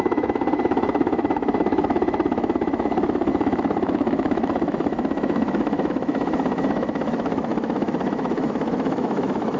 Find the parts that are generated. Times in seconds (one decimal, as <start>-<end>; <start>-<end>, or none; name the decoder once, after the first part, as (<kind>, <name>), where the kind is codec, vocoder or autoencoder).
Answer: 0.0-9.6 (autoencoder, DAC-VAE)